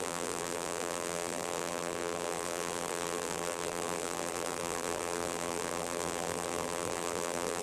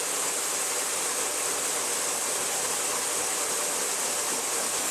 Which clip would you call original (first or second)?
second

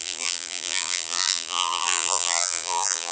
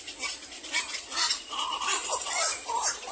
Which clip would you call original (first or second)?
second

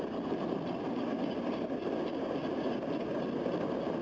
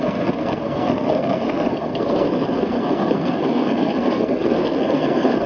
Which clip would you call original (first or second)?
first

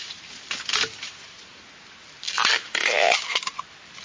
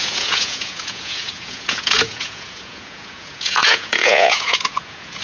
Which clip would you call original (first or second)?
first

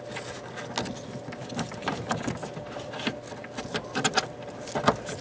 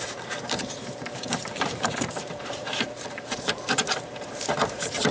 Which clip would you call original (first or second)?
first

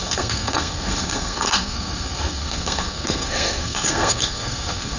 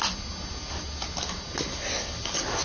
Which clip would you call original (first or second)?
second